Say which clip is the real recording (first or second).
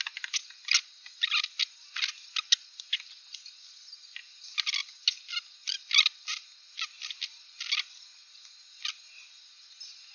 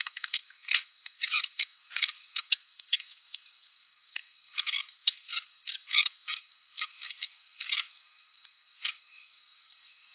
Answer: first